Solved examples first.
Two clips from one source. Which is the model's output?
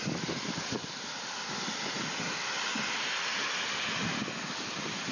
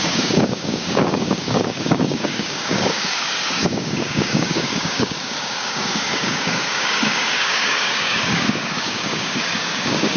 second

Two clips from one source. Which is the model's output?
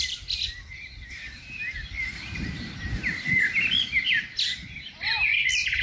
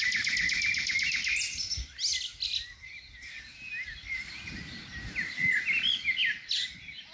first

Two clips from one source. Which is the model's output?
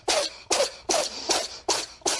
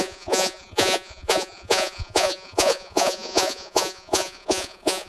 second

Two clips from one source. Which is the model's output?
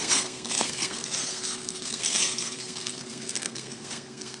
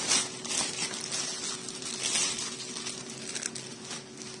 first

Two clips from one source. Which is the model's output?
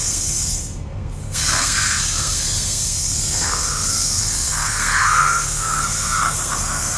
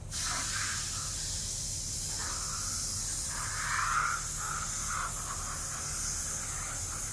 first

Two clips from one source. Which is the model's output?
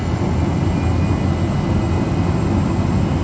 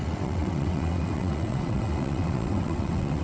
second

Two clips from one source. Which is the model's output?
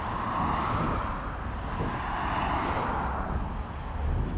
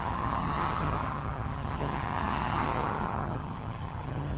second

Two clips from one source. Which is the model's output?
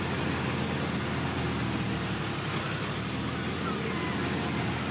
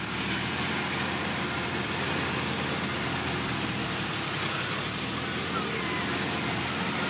second